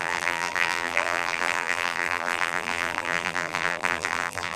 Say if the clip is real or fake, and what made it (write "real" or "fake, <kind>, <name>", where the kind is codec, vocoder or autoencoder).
fake, vocoder, BigVGAN v2